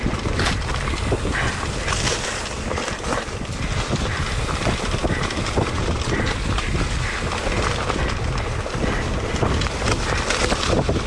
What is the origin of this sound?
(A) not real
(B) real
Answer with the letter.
B